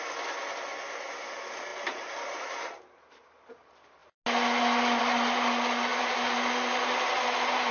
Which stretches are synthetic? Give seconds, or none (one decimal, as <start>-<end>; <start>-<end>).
1.7-3.5; 5.9-7.1